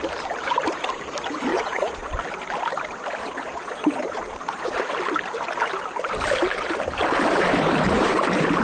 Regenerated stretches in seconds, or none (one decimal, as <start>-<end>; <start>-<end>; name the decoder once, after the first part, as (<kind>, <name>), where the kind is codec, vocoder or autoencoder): 1.5-2.1 (vocoder, Vocos); 3.2-4.8